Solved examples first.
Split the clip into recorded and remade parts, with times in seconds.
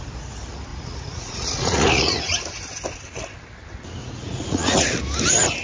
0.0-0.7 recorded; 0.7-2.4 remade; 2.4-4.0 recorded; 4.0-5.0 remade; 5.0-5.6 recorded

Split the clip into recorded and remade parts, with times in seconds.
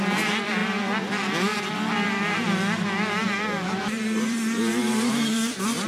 0.0-5.9 remade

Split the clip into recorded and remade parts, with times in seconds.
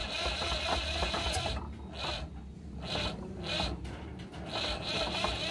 0.0-5.5 recorded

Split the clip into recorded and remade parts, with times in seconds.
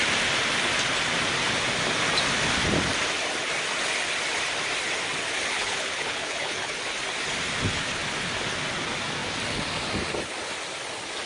0.0-5.2 recorded; 5.2-6.8 remade; 6.8-11.3 recorded